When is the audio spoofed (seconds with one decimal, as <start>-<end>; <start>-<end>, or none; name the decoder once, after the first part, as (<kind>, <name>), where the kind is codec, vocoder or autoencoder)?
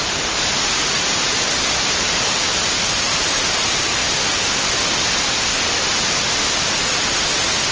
0.0-4.0 (vocoder, BigVGAN v2)